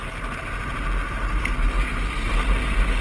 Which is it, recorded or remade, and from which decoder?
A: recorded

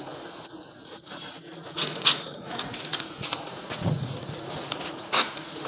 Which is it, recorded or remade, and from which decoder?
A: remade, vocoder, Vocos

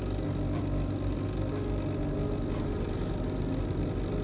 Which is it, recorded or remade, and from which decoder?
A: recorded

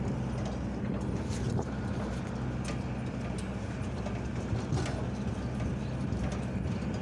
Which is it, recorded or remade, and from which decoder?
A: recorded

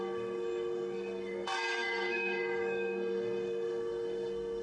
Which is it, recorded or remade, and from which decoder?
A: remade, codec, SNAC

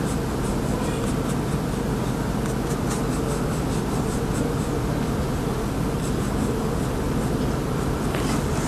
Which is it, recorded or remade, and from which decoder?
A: recorded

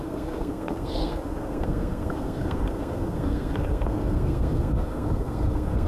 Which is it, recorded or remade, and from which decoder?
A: remade, codec, SNAC